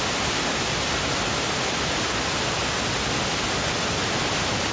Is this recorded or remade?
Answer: recorded